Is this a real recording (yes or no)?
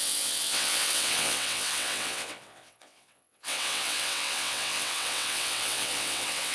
no